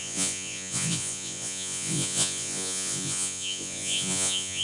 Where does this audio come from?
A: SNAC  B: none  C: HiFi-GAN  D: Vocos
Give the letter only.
D